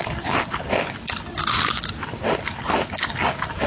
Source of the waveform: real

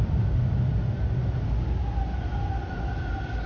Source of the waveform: real